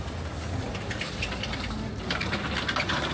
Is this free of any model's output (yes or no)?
yes